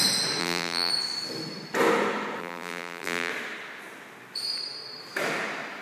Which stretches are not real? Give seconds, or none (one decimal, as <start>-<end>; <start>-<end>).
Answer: 0.4-0.9; 2.4-3.3